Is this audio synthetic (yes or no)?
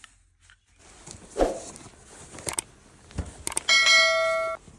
no